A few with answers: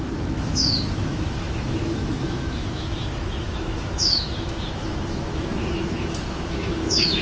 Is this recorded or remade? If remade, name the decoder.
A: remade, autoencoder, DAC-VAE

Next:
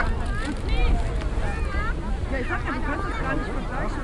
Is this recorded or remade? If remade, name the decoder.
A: recorded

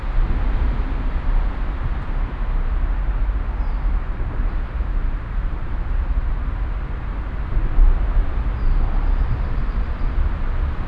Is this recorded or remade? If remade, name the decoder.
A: recorded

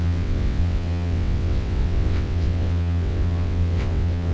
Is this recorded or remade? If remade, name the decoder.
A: remade, vocoder, WaveNeXt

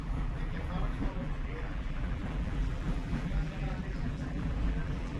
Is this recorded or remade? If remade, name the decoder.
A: remade, vocoder, BigVGAN v2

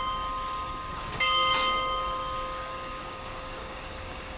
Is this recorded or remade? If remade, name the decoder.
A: remade, codec, DAC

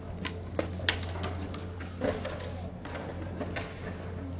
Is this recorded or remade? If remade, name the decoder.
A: recorded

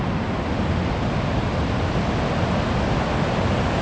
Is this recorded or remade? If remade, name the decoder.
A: recorded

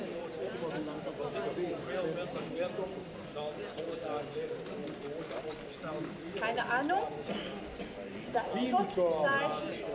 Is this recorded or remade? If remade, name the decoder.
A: recorded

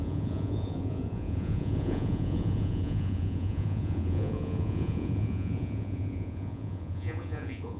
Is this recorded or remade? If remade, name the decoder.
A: remade, vocoder, Vocos